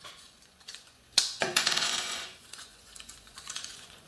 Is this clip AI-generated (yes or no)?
yes